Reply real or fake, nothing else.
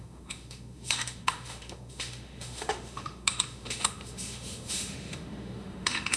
fake